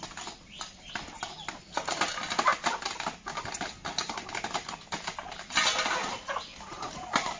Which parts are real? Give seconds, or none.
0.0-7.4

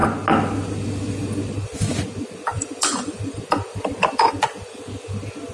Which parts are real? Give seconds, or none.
0.0-2.5; 3.4-5.5